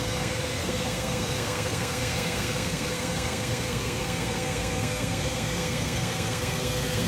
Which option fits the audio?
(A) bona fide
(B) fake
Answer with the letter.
B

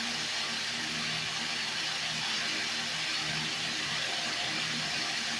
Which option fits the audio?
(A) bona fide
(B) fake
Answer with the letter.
A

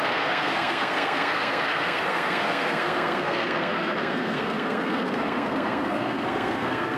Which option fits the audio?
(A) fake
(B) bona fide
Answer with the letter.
A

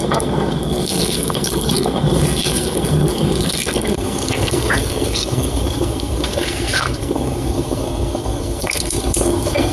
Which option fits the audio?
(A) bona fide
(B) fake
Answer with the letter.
B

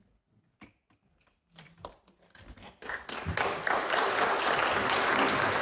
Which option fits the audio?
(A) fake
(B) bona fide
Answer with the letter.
B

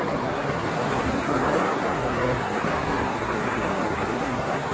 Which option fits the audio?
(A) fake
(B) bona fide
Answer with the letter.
A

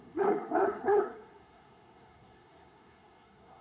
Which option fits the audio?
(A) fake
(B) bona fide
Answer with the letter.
A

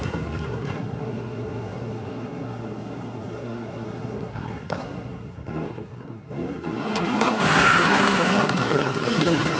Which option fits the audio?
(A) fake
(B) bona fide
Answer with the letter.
A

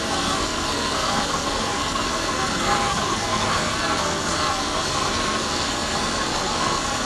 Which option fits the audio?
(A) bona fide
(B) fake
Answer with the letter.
B